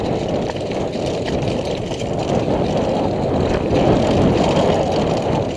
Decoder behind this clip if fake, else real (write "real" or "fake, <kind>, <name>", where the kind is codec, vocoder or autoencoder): real